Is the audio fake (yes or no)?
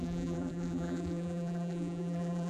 yes